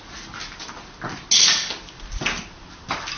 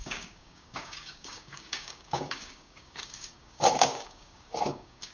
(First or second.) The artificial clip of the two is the second